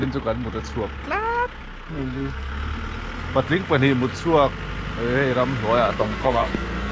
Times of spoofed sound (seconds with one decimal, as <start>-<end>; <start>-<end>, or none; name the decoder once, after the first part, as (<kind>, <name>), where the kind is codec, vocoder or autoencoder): 1.9-2.5 (codec, SNAC); 6.0-6.9

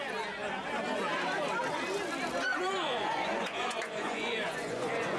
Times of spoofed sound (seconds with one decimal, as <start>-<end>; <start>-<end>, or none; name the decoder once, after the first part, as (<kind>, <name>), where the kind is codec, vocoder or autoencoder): 2.5-5.2 (vocoder, Vocos)

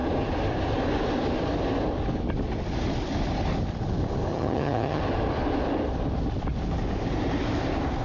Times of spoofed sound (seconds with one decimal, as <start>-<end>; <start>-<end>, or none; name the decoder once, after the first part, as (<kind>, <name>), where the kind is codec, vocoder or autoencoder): 4.3-5.0 (vocoder, HiFi-GAN)

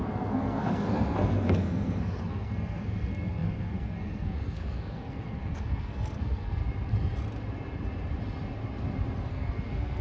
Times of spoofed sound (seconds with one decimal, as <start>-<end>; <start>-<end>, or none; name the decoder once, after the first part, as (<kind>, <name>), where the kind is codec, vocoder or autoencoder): 0.0-6.6 (codec, SNAC); 9.3-10.0

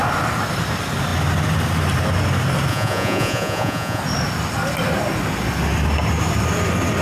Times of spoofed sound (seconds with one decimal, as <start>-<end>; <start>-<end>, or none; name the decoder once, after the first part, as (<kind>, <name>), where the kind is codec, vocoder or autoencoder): 2.7-4.0 (vocoder, Vocos)

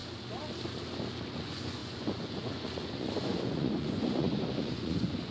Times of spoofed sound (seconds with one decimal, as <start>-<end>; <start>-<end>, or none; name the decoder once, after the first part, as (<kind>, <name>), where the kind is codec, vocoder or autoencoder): 1.4-5.3 (vocoder, Vocos)

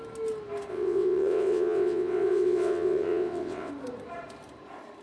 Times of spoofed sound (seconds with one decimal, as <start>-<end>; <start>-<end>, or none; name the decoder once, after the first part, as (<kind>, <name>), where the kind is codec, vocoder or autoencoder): 0.7-3.7 (vocoder, WaveNeXt)

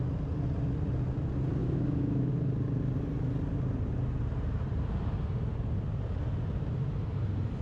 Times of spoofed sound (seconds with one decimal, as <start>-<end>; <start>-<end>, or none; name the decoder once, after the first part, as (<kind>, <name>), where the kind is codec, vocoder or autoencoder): 1.6-2.3 (autoencoder, DAC-VAE)